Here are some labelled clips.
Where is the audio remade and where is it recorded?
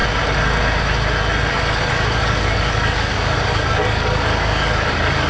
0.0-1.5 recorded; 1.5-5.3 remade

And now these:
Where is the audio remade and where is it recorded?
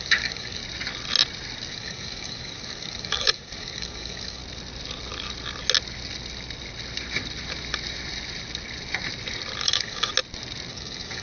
0.0-0.6 remade; 0.6-1.7 recorded; 1.7-4.4 remade; 4.4-9.6 recorded; 9.6-10.1 remade; 10.1-10.7 recorded; 10.7-11.2 remade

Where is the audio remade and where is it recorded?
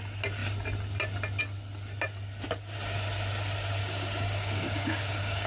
0.0-3.8 recorded; 3.8-5.5 remade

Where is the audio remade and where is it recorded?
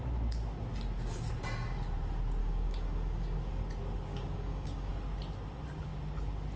0.0-2.4 recorded; 2.4-3.4 remade; 3.4-4.1 recorded; 4.1-4.9 remade; 4.9-6.6 recorded